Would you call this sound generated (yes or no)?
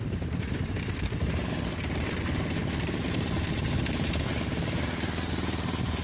yes